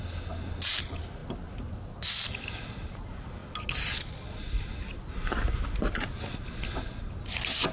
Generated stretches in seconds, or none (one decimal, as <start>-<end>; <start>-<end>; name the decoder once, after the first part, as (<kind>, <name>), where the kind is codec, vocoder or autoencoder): none